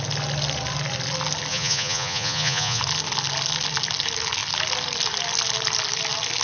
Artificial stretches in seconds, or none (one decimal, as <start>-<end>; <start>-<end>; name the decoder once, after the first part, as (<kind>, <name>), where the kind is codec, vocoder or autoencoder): 1.5-2.8 (vocoder, Vocos)